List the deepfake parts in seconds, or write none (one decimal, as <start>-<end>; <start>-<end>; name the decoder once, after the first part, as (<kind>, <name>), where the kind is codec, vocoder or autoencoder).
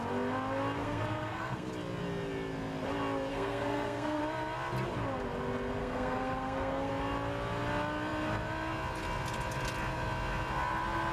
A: 0.8-1.7 (codec, SNAC); 3.3-4.2; 5.8-6.9